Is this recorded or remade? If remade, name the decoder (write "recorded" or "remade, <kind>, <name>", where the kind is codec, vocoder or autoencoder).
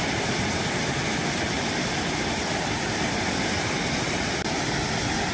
recorded